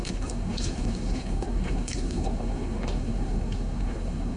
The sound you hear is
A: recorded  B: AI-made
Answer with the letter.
B